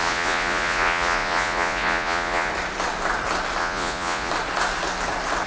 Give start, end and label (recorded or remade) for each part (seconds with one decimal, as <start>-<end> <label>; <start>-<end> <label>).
0.0-2.5 remade; 2.5-3.6 recorded; 3.6-4.3 remade; 4.3-5.5 recorded